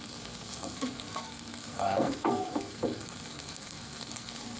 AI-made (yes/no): yes